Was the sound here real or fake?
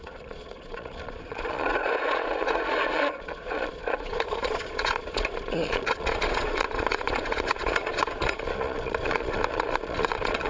fake